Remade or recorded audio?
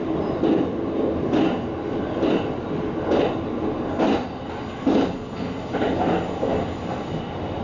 recorded